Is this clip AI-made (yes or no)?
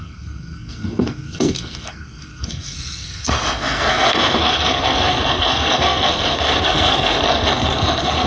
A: yes